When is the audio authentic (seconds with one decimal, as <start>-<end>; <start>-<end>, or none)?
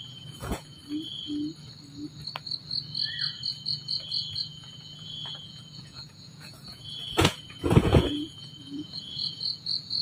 0.8-3.5